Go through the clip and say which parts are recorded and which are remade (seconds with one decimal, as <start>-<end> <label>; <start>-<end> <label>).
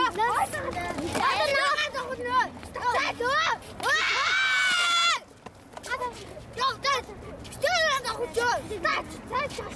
0.0-9.8 recorded